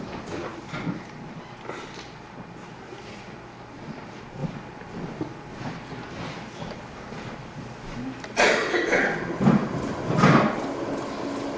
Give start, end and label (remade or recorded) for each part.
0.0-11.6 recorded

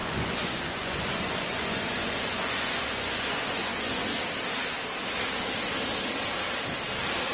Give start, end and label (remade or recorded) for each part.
0.0-4.2 remade; 4.2-7.3 recorded